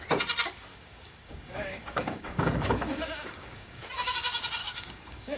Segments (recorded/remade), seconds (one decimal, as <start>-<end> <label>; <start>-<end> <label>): 0.0-0.7 recorded; 0.7-3.9 remade; 3.9-4.6 recorded; 4.6-5.4 remade